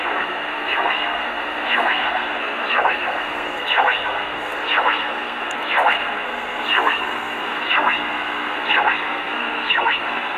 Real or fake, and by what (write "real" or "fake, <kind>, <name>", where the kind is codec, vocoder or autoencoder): fake, codec, SNAC